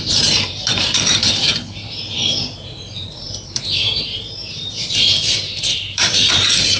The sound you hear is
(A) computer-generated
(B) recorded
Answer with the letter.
A